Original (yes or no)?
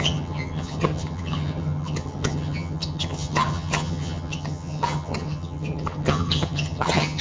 no